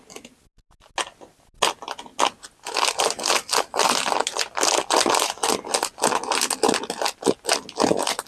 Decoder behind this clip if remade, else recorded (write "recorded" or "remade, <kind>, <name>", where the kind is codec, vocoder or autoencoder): recorded